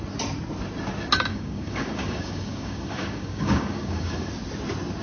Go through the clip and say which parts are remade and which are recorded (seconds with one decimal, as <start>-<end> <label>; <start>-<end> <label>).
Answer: 0.0-1.3 recorded; 1.3-4.3 remade; 4.3-5.0 recorded